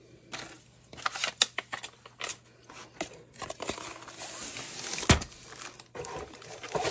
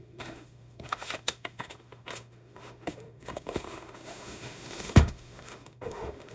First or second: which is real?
first